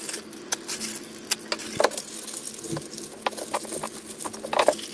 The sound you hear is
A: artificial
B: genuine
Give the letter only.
B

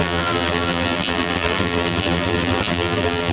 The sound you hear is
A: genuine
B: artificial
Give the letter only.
B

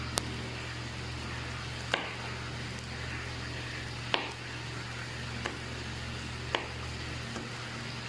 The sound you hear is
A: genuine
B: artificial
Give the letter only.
A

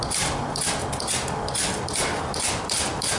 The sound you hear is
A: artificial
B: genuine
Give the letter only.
B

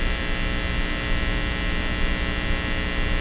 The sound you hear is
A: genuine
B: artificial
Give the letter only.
A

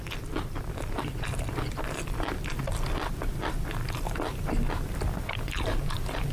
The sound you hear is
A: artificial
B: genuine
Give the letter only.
A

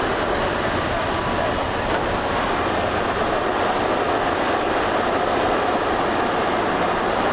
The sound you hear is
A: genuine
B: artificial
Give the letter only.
A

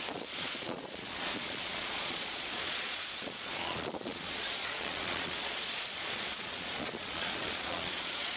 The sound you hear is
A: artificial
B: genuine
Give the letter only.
A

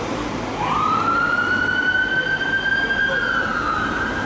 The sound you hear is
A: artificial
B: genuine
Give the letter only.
B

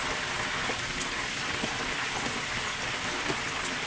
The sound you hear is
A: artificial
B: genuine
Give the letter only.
B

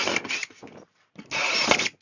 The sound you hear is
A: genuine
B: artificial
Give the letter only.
A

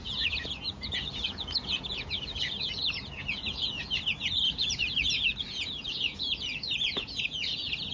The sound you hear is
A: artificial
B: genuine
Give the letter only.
A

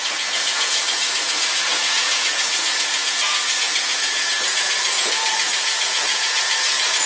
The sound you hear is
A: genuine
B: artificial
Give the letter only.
B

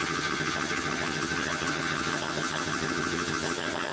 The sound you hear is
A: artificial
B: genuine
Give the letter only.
A